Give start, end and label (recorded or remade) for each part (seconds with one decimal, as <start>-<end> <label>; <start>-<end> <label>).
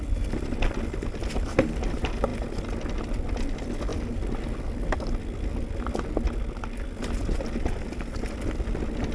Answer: 0.0-9.1 recorded